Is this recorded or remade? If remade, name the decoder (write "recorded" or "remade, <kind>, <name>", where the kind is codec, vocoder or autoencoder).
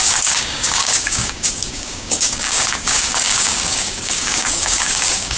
remade, codec, DAC